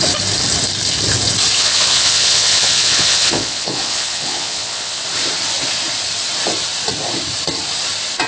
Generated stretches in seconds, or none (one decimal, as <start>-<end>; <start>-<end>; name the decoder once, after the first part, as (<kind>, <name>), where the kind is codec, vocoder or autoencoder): 1.6-5.0 (vocoder, Vocos)